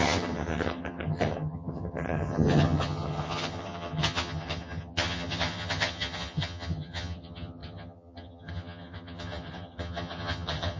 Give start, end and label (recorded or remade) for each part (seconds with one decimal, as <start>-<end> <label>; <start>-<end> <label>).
0.0-10.8 remade